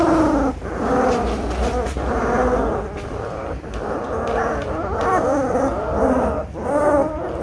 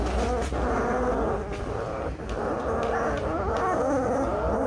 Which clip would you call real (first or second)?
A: second